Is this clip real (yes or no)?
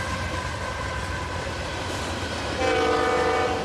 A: yes